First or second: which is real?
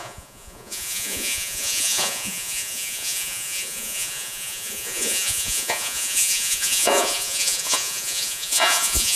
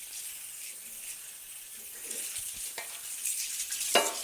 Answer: second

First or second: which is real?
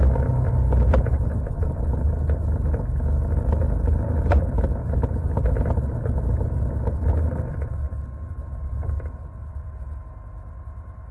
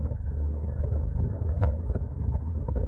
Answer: first